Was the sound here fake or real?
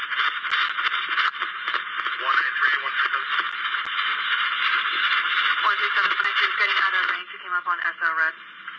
real